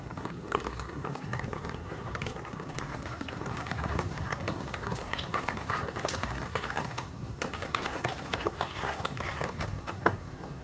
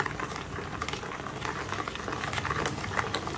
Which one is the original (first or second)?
second